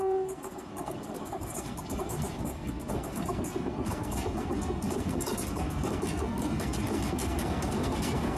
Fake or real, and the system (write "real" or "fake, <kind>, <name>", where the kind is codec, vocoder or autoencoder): fake, codec, SNAC